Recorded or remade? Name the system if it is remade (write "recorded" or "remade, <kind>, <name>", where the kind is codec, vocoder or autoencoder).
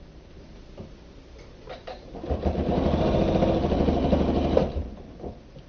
recorded